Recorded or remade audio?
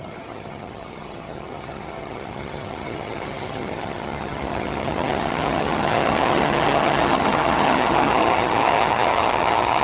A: remade